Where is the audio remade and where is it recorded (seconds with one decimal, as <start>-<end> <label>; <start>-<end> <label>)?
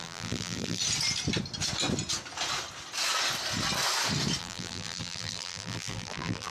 0.0-0.8 remade; 0.8-4.4 recorded; 4.4-6.5 remade